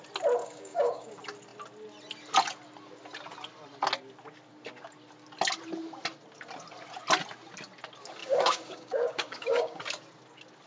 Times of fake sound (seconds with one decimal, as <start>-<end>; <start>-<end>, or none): 0.4-1.1; 8.2-9.8